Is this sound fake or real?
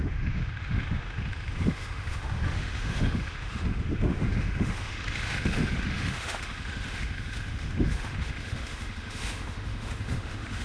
fake